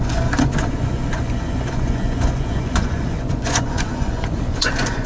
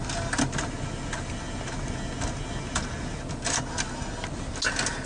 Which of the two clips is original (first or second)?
second